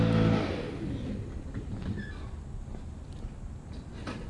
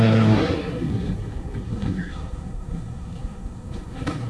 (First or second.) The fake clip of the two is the second